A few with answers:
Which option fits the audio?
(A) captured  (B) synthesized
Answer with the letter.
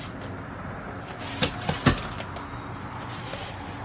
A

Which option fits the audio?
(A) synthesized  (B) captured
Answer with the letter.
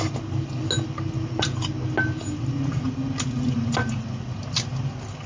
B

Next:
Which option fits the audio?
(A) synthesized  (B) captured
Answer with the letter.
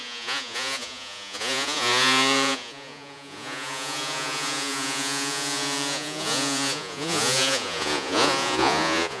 A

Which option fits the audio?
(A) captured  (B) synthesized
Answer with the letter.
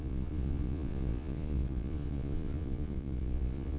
B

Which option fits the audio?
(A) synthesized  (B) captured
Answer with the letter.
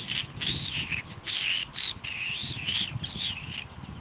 B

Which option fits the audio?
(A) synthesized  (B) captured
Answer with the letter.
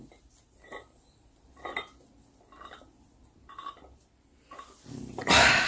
B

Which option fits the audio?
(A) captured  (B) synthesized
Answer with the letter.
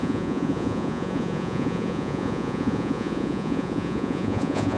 B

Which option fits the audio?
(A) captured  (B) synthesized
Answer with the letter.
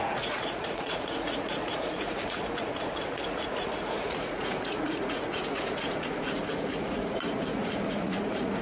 B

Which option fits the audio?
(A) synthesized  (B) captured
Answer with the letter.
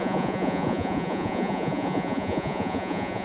A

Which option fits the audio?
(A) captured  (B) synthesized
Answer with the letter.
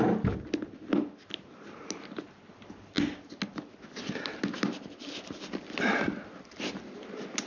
A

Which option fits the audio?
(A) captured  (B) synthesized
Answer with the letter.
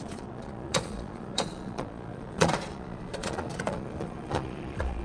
B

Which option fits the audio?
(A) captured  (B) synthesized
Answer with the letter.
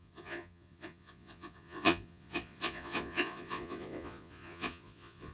B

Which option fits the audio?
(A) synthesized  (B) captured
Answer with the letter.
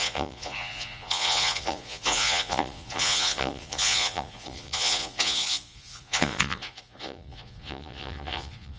A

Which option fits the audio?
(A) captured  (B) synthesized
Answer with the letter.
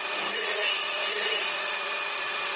B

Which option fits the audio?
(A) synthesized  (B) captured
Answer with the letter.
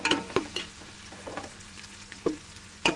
A